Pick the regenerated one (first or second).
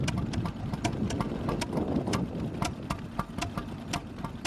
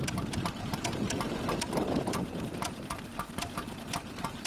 second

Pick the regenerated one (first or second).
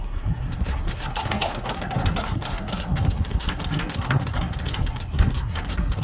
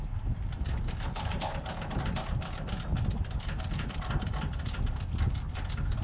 first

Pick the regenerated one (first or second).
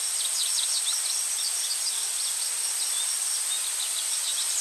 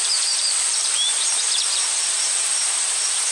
first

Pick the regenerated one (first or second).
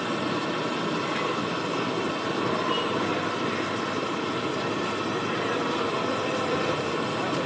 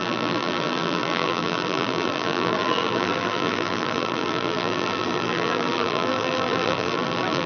second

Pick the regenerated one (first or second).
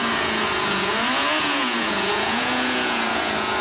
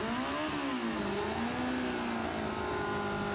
first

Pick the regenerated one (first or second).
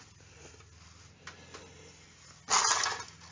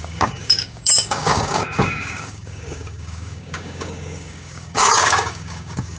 second